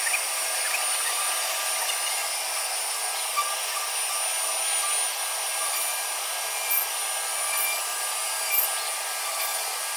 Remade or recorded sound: recorded